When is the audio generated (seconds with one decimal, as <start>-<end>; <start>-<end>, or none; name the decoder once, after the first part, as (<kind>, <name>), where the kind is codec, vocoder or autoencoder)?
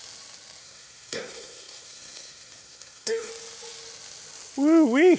0.6-3.3 (codec, SNAC)